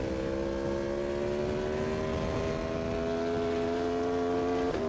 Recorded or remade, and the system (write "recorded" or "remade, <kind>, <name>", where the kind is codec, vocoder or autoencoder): recorded